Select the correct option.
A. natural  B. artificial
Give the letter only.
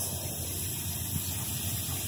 A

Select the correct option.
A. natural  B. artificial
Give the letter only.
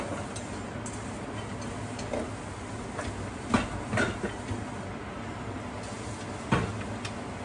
A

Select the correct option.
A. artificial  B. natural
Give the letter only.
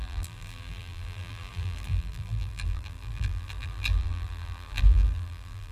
A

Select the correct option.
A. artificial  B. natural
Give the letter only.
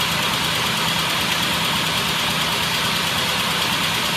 B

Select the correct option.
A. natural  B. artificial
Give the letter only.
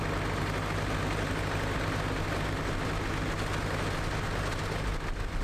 A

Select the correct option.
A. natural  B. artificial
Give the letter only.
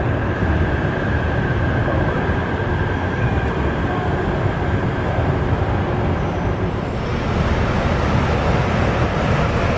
B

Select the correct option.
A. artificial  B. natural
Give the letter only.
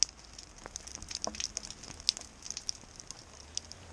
B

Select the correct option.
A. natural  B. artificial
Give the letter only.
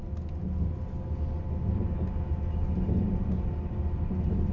A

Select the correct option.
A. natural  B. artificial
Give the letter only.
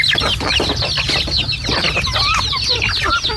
A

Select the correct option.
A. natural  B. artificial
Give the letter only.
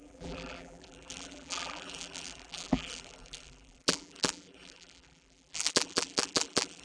B